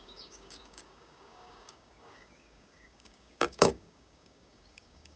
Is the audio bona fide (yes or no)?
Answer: no